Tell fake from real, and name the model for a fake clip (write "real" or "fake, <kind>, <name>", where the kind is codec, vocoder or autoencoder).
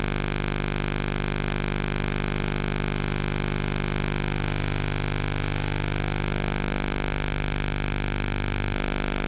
real